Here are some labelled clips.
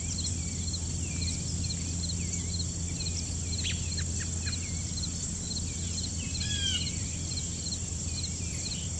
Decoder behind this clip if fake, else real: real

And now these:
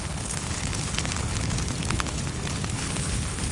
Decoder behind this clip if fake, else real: fake, codec, HILCodec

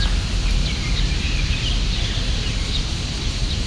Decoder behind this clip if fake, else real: real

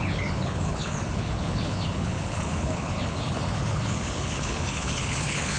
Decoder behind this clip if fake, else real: fake, codec, HILCodec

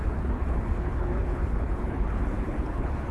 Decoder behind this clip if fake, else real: fake, codec, HILCodec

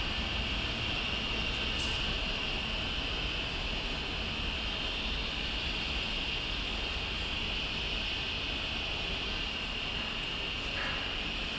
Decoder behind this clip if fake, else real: real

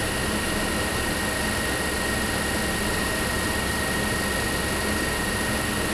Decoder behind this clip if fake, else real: real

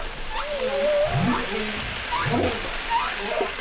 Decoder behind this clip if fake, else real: real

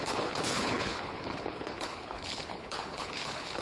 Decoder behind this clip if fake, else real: fake, codec, HILCodec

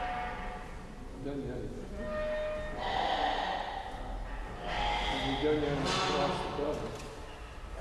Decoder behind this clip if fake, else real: real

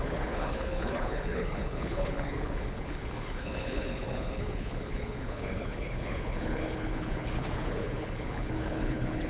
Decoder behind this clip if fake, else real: fake, codec, HILCodec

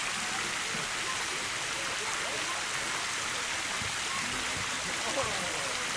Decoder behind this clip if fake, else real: real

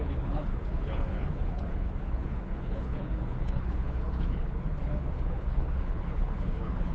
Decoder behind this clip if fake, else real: fake, codec, HILCodec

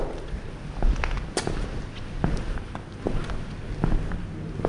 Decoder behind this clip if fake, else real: real